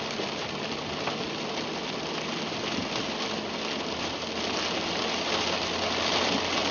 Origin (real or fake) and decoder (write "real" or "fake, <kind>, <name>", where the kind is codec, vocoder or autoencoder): real